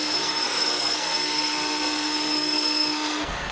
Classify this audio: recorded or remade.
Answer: remade